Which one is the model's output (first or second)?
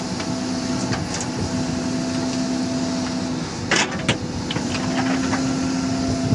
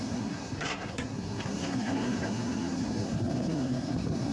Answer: second